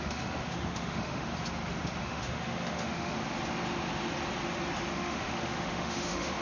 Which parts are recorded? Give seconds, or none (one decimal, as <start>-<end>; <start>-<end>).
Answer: 1.3-2.0; 3.2-4.9